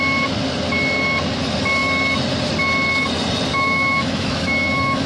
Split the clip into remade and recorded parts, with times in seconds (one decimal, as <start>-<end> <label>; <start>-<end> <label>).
0.0-3.5 recorded; 3.5-5.1 remade